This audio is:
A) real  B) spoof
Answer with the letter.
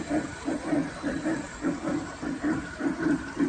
A